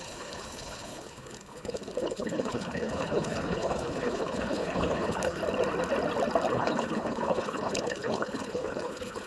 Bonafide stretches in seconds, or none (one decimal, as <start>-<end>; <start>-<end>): 5.4-6.5